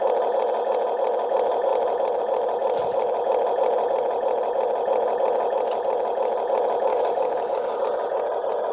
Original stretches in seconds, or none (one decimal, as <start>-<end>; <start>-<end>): 0.0-6.9; 7.8-8.7